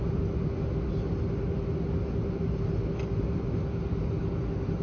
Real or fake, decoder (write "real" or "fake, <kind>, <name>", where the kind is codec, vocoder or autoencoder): real